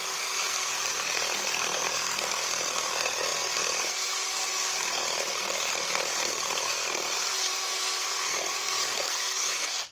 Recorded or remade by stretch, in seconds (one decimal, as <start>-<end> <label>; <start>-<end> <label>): 0.0-9.9 remade